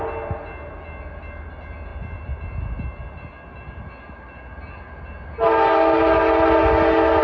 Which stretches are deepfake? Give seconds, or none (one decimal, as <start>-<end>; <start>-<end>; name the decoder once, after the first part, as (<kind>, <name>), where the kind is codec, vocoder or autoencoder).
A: none